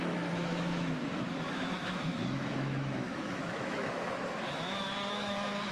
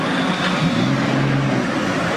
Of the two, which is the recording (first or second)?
second